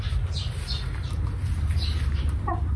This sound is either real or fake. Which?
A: real